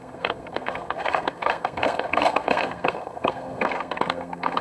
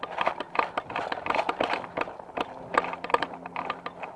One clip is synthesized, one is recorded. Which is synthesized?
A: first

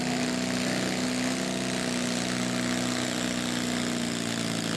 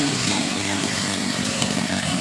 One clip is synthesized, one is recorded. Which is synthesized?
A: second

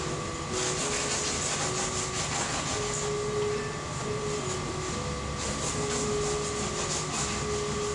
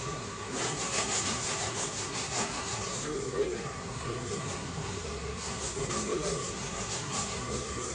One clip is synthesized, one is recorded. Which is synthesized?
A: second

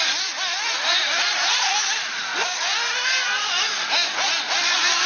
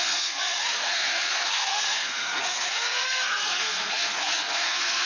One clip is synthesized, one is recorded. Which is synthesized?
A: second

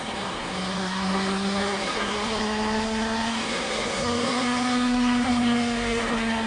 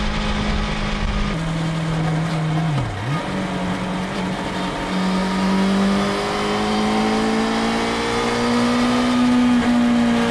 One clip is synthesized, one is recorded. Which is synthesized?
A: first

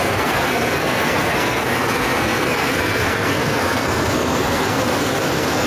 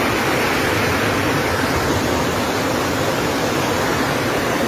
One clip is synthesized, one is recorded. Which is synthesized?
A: first